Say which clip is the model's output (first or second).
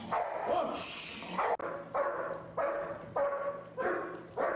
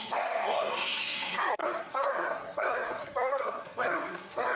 second